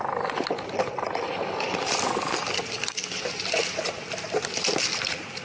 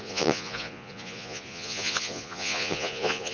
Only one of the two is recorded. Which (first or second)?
first